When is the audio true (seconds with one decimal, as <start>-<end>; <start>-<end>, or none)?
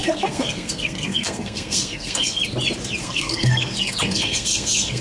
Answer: 2.4-3.0